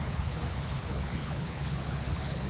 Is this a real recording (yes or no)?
no